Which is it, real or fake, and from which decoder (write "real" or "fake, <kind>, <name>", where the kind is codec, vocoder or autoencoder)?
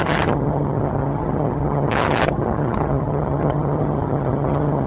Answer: fake, vocoder, HiFi-GAN